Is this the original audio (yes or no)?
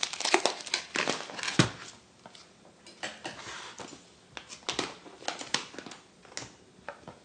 yes